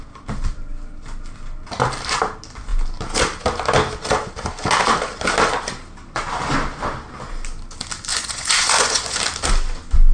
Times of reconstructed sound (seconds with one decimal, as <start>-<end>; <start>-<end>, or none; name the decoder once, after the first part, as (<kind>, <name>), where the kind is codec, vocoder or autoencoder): 8.1-9.2 (vocoder, Vocos)